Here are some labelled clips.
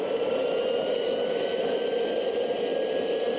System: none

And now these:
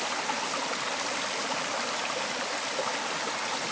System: none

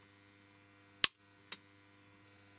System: none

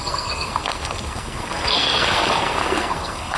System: codec, SNAC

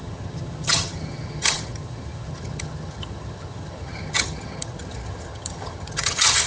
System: vocoder, HiFi-GAN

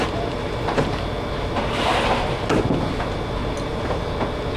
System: none